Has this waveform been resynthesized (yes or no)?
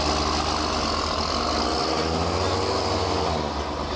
no